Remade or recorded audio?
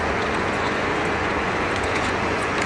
remade